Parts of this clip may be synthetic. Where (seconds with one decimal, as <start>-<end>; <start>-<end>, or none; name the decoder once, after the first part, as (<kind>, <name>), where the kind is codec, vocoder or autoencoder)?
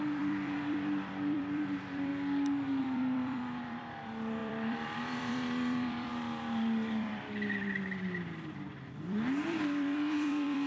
0.0-2.1 (vocoder, BigVGAN v2); 2.8-10.7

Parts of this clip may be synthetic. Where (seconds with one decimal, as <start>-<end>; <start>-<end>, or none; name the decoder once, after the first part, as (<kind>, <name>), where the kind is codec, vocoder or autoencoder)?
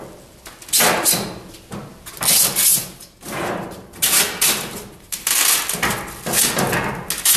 2.7-5.4 (vocoder, BigVGAN v2)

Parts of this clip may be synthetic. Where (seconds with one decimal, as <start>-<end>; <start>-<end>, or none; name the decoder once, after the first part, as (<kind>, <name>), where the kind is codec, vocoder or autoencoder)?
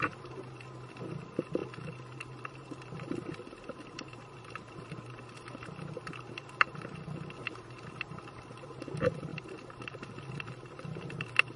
9.3-10.2 (vocoder, BigVGAN v2)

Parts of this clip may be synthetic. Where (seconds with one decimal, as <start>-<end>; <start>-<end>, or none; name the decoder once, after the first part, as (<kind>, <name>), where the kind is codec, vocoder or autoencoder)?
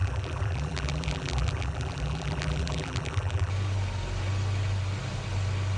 0.0-3.5 (vocoder, BigVGAN v2)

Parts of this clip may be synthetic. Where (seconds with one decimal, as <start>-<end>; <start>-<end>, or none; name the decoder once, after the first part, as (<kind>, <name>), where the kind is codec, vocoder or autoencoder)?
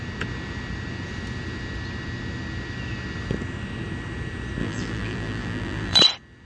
4.6-6.0 (vocoder, BigVGAN v2)